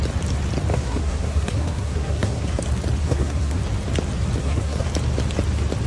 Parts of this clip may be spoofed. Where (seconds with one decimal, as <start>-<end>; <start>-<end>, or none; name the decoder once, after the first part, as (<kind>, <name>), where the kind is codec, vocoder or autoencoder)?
0.7-2.6 (codec, SNAC); 3.0-3.6; 4.4-4.9